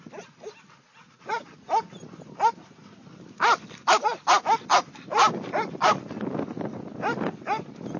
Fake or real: real